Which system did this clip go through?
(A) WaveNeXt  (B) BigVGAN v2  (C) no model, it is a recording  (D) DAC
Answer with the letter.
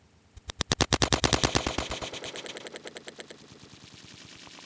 C